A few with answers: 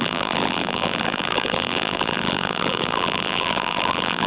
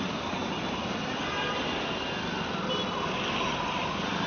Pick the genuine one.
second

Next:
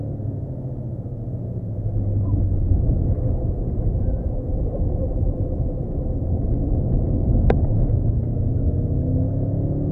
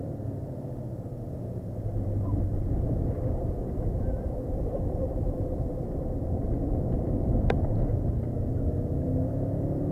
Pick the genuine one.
first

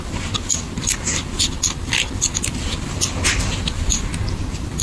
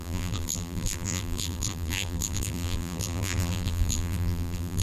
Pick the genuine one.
first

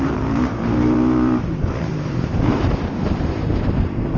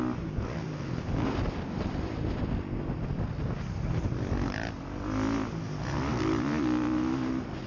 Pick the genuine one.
second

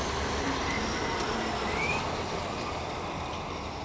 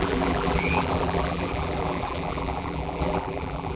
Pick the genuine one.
first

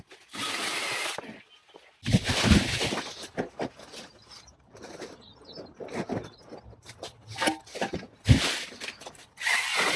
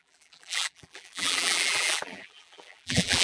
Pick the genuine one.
first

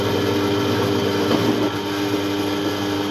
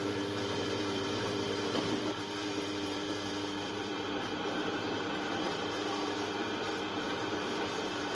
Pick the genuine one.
first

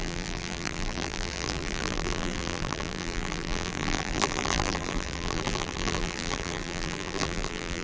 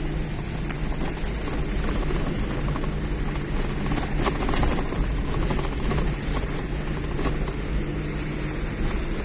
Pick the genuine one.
second